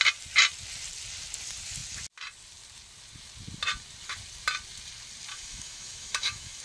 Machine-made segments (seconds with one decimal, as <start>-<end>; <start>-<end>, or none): 5.3-6.6